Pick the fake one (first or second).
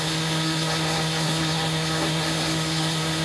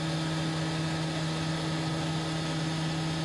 first